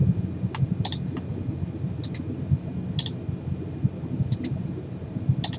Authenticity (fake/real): real